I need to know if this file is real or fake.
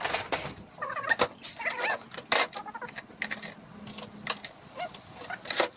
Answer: real